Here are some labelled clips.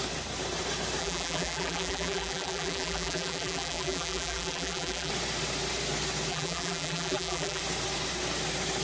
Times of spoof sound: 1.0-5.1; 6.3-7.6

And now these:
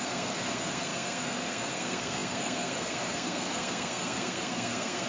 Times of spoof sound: 0.0-5.1

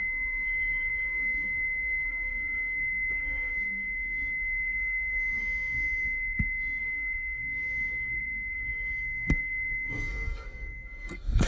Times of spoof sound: 0.0-11.5

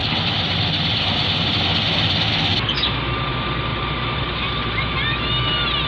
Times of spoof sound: 0.0-1.6; 3.7-4.9

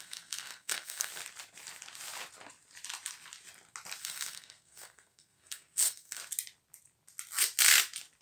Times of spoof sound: 0.0-1.1; 4.0-6.2

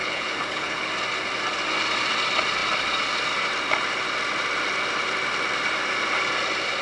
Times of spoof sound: 0.0-0.9

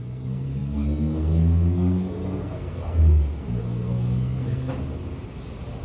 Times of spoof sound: 0.0-4.7

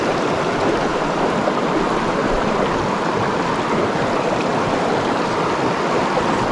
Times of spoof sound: 0.9-1.8; 2.2-2.9